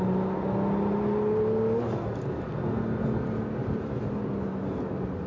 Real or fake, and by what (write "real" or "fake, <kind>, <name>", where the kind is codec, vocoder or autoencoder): real